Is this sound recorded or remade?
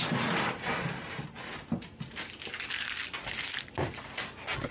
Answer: recorded